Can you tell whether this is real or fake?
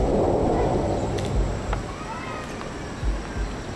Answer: real